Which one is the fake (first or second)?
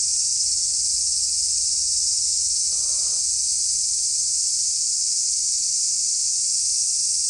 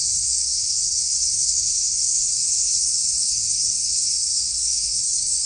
second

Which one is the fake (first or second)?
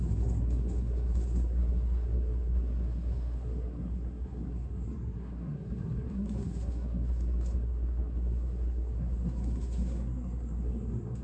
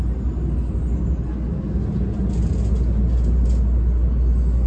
first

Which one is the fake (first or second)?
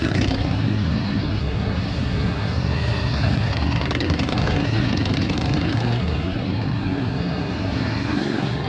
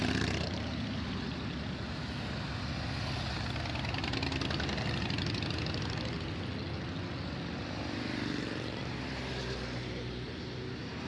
first